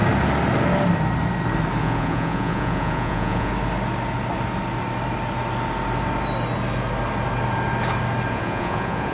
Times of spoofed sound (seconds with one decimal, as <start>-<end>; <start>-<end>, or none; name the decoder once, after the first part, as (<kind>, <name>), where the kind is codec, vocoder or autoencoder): 1.8-3.5 (vocoder, Vocos); 8.3-9.1